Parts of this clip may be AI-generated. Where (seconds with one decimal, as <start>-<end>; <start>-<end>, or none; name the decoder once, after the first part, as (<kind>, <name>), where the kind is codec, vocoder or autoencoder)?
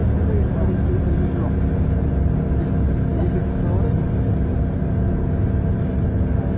none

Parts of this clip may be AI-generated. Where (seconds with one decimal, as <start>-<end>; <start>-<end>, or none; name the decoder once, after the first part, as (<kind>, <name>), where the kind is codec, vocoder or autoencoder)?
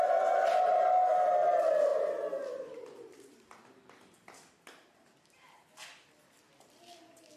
none